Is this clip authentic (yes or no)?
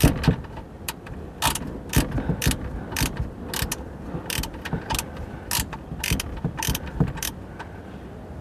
yes